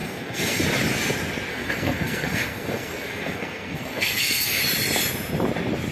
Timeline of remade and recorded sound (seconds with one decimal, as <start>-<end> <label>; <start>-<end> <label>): 0.0-0.6 remade; 0.6-1.5 recorded; 1.5-4.6 remade; 4.6-5.9 recorded